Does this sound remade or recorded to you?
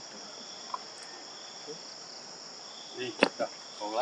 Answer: recorded